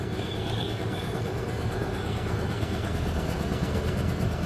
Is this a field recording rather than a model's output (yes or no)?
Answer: no